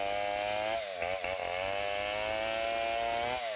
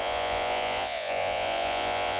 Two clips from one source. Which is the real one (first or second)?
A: first